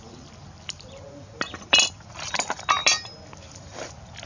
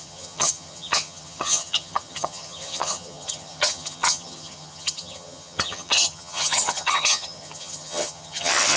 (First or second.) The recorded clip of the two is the first